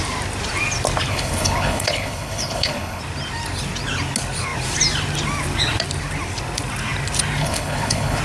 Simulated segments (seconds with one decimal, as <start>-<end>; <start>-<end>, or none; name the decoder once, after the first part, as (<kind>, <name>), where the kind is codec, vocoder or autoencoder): 1.1-3.0 (codec, HILCodec); 7.4-8.2